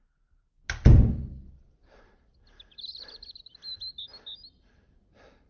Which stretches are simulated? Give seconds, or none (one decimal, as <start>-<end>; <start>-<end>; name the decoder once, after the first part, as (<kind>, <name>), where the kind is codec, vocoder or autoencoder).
none